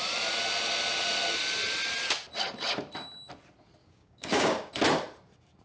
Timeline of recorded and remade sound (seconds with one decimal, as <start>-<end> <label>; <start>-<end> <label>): 0.0-3.8 recorded; 3.8-4.7 remade; 4.7-5.6 recorded